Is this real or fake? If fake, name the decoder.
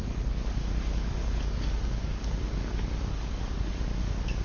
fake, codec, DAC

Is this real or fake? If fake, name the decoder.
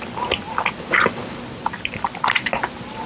real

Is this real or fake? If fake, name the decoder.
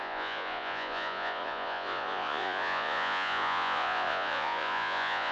fake, vocoder, Vocos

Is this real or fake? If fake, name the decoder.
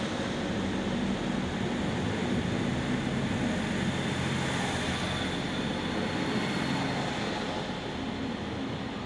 real